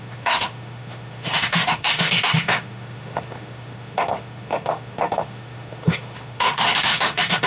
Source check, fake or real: fake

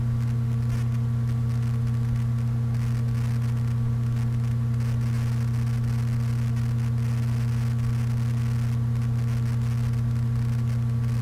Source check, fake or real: real